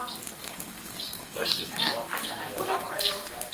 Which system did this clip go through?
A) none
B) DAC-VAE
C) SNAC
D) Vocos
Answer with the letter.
C